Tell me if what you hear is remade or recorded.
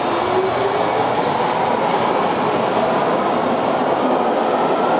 recorded